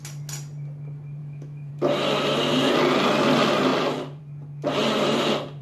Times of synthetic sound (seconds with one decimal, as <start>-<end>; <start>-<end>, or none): 1.2-1.7